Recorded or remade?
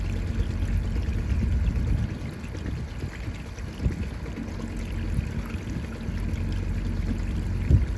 recorded